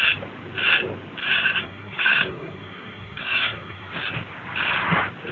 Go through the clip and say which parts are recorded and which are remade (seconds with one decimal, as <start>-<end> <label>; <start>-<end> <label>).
0.0-1.2 recorded; 1.2-3.9 remade; 3.9-5.3 recorded